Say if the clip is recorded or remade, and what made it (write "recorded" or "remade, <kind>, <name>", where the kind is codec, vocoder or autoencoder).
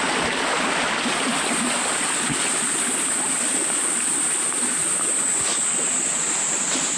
recorded